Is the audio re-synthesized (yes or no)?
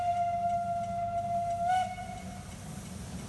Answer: no